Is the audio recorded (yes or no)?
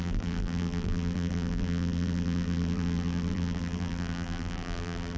no